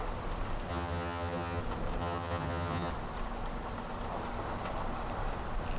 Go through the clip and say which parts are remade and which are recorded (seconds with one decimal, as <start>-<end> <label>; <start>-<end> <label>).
0.0-0.7 recorded; 0.7-1.6 remade; 1.6-2.0 recorded; 2.0-2.9 remade; 2.9-5.8 recorded